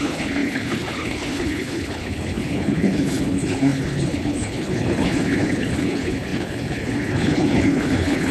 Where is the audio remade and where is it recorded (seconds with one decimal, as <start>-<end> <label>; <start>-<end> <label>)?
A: 0.0-8.3 remade